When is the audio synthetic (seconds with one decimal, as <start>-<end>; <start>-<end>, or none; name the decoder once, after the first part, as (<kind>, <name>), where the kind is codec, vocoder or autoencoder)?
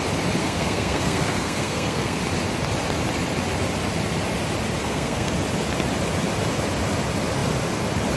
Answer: 0.4-2.2 (codec, SNAC); 4.8-5.3